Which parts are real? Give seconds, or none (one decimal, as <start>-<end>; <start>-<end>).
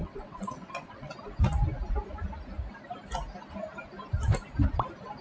1.1-5.2